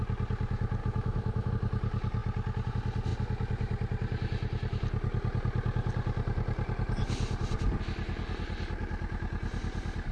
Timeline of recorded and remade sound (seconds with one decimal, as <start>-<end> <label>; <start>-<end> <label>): 0.0-0.8 recorded; 0.8-1.5 remade; 1.5-10.1 recorded